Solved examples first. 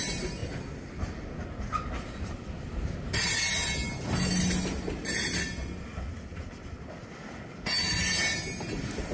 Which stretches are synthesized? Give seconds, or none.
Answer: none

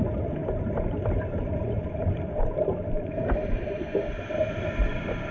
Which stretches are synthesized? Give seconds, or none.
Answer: 0.4-3.6 (vocoder, BigVGAN v2)

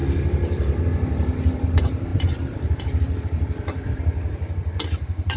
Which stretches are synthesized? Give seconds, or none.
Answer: 2.1-4.0 (vocoder, BigVGAN v2)